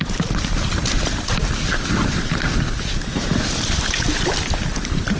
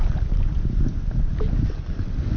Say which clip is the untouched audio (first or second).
second